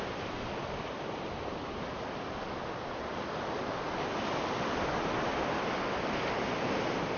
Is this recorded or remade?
recorded